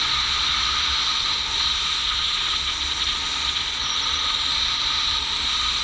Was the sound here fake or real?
real